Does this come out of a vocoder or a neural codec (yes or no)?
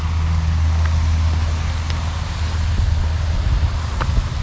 no